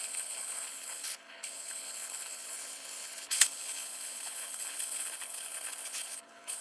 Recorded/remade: remade